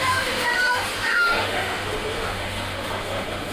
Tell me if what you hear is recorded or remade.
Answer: remade